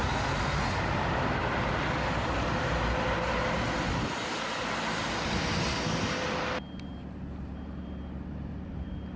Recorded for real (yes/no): yes